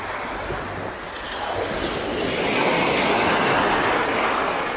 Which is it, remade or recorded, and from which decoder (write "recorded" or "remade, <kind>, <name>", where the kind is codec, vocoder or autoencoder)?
recorded